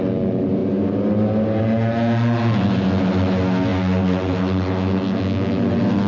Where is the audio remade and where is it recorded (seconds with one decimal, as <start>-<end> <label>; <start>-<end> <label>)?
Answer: 0.0-3.7 recorded; 3.7-4.4 remade; 4.4-6.1 recorded